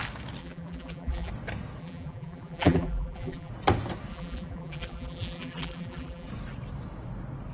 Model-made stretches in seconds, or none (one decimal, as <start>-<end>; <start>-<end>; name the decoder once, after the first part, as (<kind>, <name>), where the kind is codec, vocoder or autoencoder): 0.4-1.3 (vocoder, BigVGAN v2); 1.8-3.5; 4.1-6.3